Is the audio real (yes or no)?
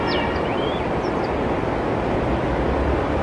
yes